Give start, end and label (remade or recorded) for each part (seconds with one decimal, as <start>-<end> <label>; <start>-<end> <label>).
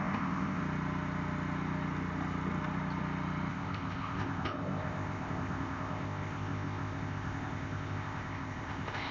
0.0-0.6 remade; 0.6-3.5 recorded; 3.5-9.1 remade